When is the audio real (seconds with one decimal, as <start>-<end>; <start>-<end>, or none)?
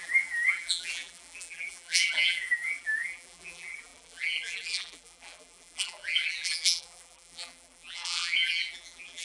none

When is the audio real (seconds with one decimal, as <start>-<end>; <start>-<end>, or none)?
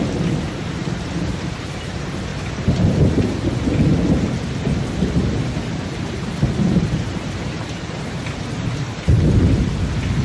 2.3-5.3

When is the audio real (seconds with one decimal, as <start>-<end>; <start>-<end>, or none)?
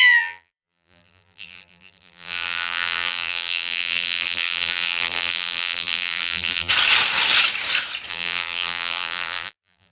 6.7-8.1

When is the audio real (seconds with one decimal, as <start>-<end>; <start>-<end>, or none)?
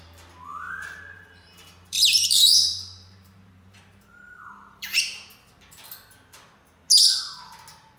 0.0-0.5; 5.0-8.0